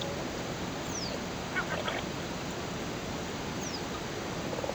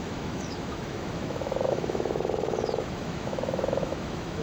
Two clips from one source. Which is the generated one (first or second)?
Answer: second